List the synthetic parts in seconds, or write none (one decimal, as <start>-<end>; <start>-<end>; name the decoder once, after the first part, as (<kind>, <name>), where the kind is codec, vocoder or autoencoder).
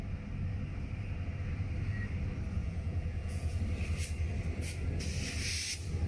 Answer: 2.6-3.6 (vocoder, Vocos)